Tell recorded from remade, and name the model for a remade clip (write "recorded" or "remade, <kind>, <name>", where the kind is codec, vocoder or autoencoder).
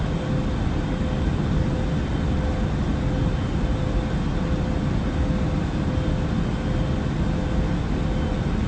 recorded